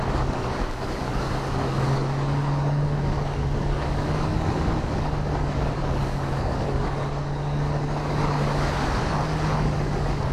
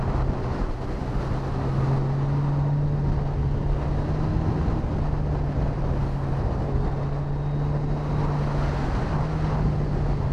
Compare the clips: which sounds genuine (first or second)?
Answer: second